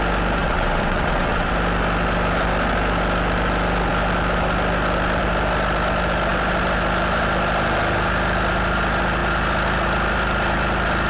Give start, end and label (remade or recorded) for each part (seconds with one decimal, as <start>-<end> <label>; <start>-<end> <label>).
0.0-0.4 recorded; 0.4-1.5 remade; 1.5-11.1 recorded